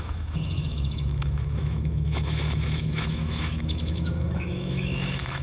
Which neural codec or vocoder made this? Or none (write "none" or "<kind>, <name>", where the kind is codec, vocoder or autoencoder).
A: autoencoder, DAC-VAE